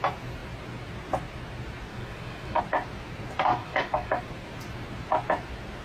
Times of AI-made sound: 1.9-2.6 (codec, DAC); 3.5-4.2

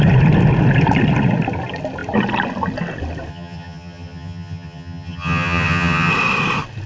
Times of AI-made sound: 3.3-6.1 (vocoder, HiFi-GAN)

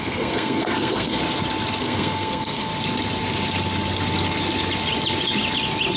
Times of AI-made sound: 0.0-1.2 (codec, SNAC); 1.8-2.7

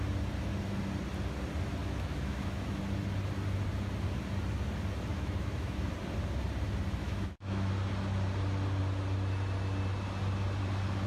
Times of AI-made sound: 1.8-2.8 (autoencoder, DAC-VAE); 5.1-5.9; 7.0-7.7